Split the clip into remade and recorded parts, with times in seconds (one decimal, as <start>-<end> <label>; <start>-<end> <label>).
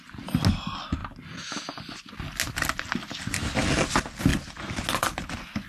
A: 0.0-5.7 recorded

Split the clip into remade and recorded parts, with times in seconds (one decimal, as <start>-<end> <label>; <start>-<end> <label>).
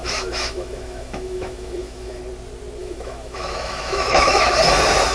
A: 0.0-2.2 remade; 2.2-2.8 recorded; 2.8-4.5 remade; 4.5-5.1 recorded